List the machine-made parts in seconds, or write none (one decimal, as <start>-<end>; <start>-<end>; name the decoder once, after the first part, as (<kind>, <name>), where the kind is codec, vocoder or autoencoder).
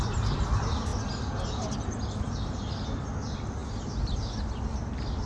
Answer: none